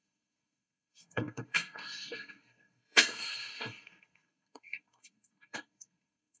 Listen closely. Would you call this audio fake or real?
fake